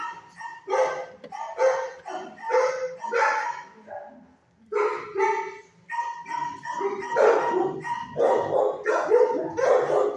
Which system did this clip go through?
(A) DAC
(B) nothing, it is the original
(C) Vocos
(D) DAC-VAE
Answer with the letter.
B